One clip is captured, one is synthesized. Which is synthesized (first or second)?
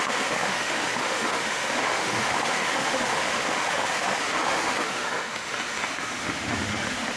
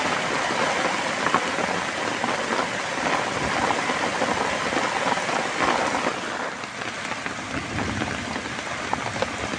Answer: first